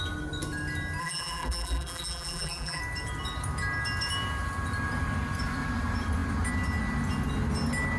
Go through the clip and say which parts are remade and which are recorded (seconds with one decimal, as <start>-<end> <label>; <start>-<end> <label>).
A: 0.0-1.0 recorded; 1.0-2.8 remade; 2.8-8.0 recorded